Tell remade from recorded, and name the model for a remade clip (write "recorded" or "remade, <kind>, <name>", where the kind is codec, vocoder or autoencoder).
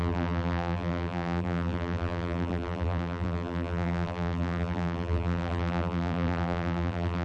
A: remade, vocoder, BigVGAN v2